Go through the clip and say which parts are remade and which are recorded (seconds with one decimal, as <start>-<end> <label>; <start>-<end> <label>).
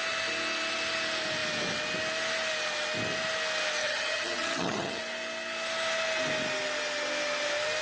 0.0-3.8 recorded; 3.8-5.0 remade; 5.0-7.8 recorded